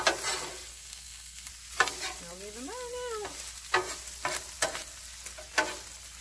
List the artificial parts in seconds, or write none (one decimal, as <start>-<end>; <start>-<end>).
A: 0.7-1.5